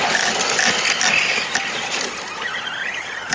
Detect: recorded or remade recorded